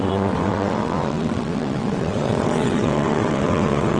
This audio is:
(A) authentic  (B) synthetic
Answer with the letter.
B